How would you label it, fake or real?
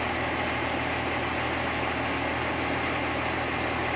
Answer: real